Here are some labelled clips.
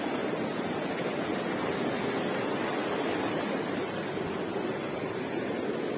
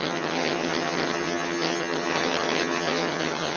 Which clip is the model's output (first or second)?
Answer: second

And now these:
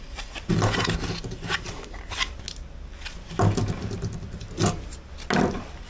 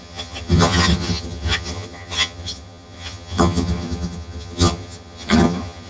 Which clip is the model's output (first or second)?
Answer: second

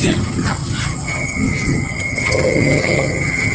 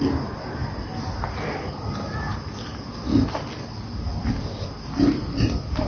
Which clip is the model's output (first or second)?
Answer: first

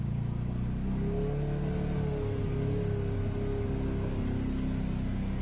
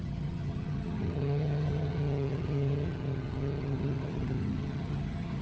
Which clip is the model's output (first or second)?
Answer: second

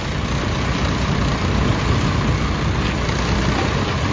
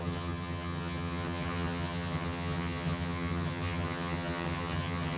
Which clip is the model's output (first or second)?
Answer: second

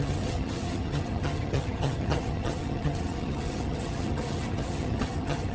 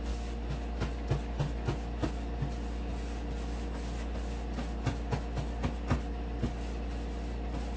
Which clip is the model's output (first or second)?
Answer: first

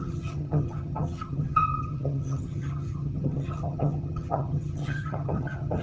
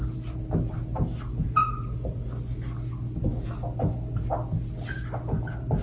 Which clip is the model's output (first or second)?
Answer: first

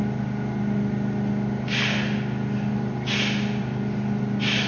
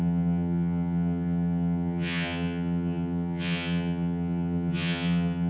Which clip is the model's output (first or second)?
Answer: second